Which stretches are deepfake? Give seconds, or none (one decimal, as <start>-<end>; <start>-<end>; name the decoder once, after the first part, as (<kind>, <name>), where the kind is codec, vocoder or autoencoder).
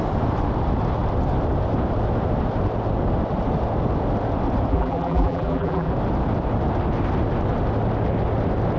4.7-5.9 (vocoder, BigVGAN v2)